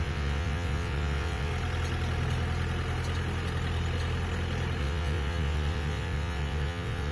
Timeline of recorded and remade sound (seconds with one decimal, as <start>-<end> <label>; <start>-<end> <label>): 0.0-1.5 remade; 1.5-4.8 recorded; 4.8-7.1 remade